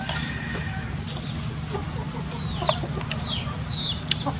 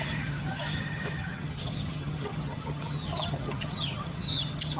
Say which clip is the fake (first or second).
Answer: second